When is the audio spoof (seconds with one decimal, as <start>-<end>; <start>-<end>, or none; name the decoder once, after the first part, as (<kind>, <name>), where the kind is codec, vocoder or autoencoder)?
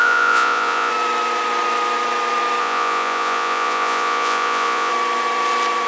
0.0-0.9 (vocoder, Vocos); 2.6-4.9